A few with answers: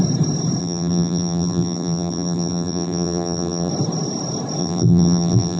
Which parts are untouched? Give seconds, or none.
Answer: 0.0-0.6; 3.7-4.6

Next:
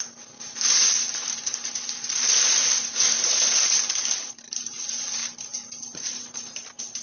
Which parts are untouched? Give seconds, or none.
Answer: none

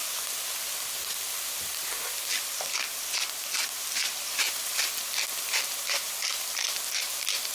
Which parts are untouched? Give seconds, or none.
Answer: 0.0-3.8; 4.8-7.5